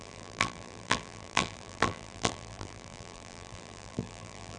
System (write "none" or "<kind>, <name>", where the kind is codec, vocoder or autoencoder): vocoder, BigVGAN v2